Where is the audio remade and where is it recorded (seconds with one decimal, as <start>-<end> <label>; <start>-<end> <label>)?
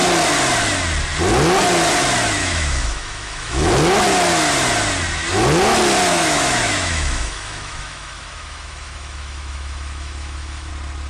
0.0-2.4 recorded; 2.4-3.7 remade; 3.7-6.1 recorded; 6.1-10.7 remade; 10.7-11.1 recorded